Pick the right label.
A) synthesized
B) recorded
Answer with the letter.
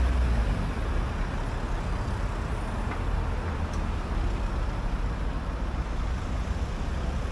B